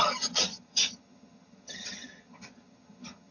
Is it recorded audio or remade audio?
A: remade